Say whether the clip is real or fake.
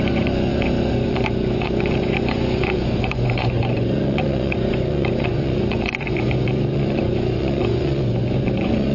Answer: fake